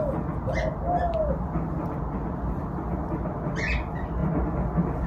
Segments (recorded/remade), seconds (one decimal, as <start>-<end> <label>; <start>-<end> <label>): 0.0-5.1 recorded